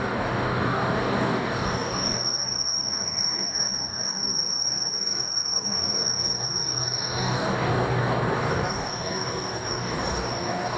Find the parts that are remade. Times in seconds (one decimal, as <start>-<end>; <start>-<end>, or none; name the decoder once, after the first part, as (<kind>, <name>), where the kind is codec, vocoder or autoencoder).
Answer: 0.0-10.8 (codec, DAC)